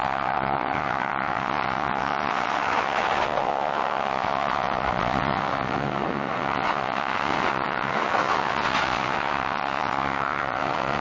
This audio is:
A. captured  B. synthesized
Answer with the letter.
B